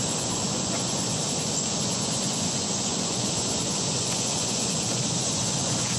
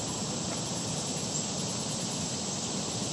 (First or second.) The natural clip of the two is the second